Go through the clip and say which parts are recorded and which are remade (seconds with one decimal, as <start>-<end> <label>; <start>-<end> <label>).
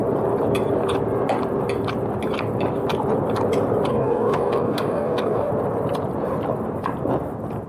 0.0-3.9 recorded; 3.9-5.5 remade; 5.5-7.7 recorded